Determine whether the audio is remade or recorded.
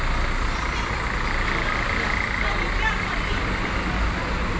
recorded